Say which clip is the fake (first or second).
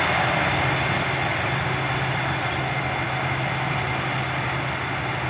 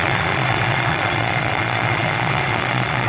second